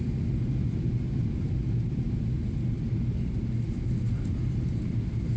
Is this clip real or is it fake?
real